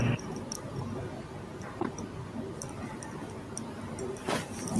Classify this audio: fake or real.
real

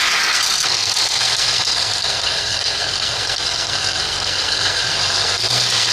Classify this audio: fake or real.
fake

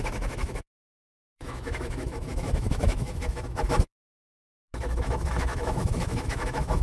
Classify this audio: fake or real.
fake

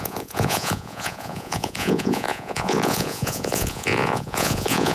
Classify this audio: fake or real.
fake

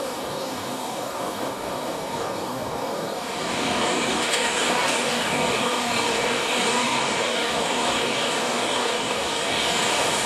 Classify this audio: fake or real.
fake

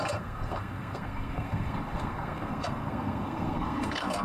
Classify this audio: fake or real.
fake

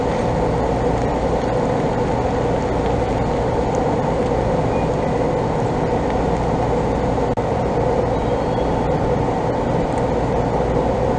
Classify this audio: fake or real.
real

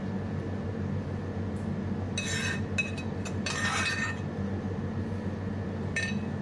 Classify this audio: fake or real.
real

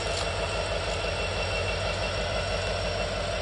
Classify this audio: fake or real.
real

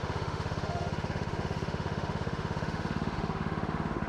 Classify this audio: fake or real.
fake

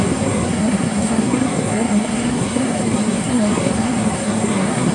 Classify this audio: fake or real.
fake